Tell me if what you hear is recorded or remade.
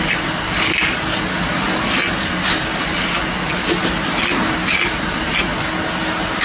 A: recorded